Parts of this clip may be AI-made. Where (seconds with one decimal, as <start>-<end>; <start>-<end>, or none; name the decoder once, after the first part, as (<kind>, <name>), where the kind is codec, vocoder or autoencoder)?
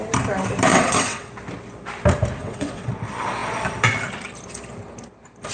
0.7-1.3 (vocoder, WaveNeXt); 2.4-2.9